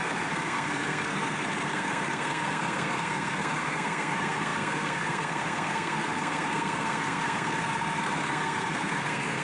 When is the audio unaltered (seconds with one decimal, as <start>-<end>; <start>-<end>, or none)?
none